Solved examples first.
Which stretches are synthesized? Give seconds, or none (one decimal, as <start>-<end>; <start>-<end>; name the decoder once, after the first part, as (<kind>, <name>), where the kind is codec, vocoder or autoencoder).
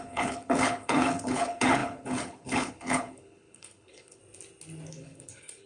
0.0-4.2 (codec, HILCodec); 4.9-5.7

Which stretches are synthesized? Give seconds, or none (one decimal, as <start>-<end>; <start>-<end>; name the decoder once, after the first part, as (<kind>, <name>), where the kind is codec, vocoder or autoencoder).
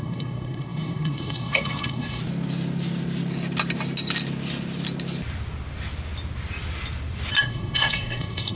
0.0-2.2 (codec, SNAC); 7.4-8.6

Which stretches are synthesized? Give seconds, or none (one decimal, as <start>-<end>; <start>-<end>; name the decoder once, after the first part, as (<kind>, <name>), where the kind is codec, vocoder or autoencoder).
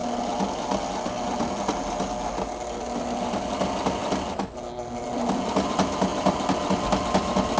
none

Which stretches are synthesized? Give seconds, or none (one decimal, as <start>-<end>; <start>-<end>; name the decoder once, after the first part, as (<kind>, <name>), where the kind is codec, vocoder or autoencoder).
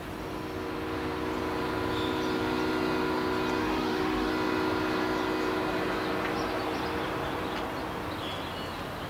3.6-4.3 (autoencoder, DAC-VAE)